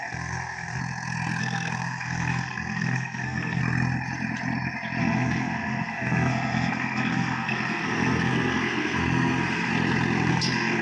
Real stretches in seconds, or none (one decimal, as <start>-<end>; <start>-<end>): 0.8-1.4; 3.6-5.0; 9.7-10.3